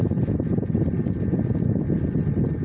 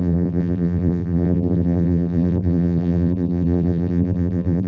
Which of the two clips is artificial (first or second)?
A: second